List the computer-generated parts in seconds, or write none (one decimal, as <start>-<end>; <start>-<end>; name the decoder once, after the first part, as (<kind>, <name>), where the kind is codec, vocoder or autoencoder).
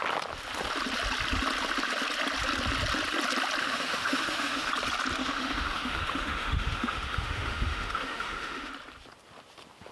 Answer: 3.6-4.7 (autoencoder, DAC-VAE); 5.2-8.7